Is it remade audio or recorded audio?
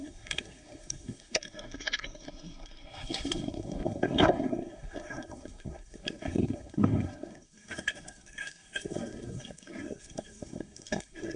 remade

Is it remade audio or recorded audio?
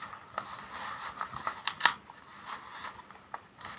recorded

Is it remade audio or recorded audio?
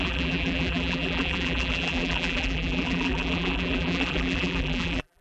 remade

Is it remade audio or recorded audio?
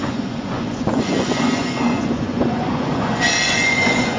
remade